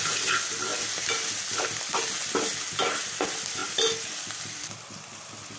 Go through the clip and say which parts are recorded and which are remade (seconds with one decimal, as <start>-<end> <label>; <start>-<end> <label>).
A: 0.0-3.6 recorded; 3.6-5.6 remade